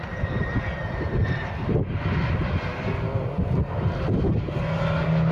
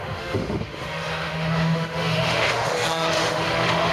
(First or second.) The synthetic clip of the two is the second